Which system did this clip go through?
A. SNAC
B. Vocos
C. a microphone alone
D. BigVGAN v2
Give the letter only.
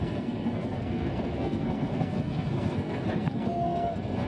A